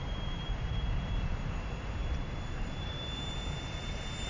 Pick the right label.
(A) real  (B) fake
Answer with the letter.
B